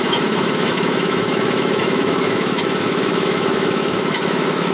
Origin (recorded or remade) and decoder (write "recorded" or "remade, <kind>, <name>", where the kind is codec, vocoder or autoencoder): remade, autoencoder, DAC-VAE